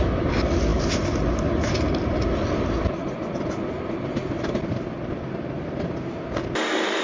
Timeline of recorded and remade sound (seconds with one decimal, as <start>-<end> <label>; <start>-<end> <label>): 0.0-7.0 recorded